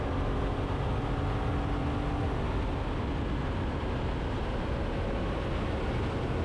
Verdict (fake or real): real